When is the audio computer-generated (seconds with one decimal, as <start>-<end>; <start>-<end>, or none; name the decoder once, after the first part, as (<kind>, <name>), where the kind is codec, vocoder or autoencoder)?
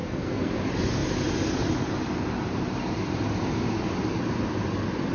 0.0-0.5 (codec, SNAC)